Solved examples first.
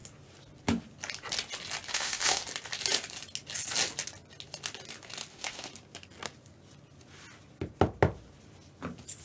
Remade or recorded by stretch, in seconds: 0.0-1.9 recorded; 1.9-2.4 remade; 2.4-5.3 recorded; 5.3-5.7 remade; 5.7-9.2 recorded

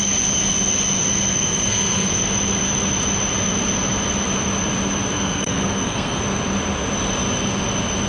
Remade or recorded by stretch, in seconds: 0.0-1.3 recorded; 1.3-2.1 remade; 2.1-5.1 recorded; 5.1-6.2 remade; 6.2-8.1 recorded

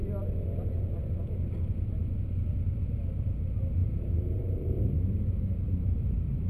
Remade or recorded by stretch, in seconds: 0.0-3.8 recorded; 3.8-6.5 remade